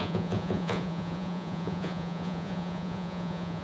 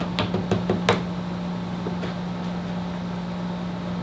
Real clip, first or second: second